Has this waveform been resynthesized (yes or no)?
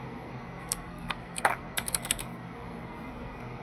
yes